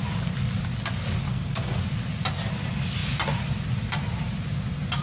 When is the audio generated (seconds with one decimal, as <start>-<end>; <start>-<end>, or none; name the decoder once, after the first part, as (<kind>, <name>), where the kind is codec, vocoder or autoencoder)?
1.3-1.8 (codec, SNAC)